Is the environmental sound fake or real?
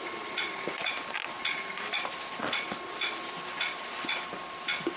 real